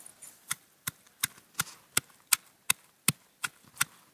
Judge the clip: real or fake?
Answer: real